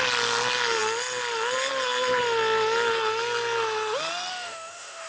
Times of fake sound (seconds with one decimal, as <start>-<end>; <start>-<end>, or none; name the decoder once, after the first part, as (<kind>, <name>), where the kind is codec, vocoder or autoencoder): 4.3-5.1 (autoencoder, DAC-VAE)